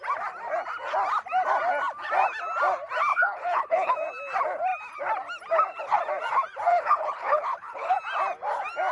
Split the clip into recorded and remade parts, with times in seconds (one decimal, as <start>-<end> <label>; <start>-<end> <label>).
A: 0.0-3.1 recorded; 3.1-3.9 remade; 3.9-6.7 recorded; 6.7-7.9 remade; 7.9-8.9 recorded